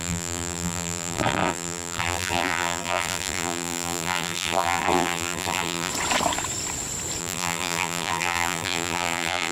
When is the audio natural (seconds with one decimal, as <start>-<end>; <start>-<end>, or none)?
5.9-7.2

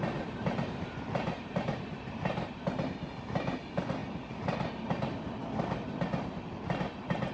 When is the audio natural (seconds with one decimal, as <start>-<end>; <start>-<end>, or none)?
0.0-0.4; 1.5-2.0; 2.6-7.3

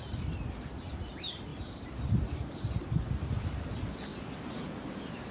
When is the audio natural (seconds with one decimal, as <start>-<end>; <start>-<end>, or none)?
1.5-2.5

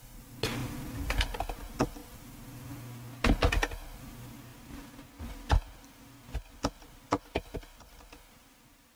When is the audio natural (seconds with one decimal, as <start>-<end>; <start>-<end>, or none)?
0.0-0.6; 1.4-9.0